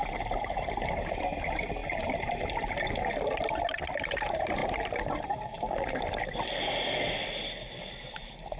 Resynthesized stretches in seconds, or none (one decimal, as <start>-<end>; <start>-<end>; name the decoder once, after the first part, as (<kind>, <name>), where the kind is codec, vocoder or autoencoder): none